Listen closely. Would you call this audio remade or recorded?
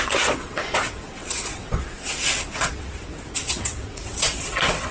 remade